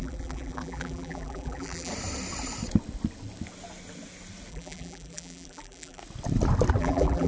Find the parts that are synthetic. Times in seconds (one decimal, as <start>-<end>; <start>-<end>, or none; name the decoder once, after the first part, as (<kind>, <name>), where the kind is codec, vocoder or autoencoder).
0.0-1.9 (vocoder, BigVGAN v2); 4.5-6.0; 6.8-7.3